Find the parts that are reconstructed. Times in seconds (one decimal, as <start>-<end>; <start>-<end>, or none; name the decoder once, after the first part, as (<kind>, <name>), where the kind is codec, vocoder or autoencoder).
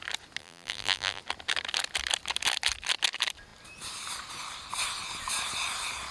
0.4-1.2 (vocoder, BigVGAN v2)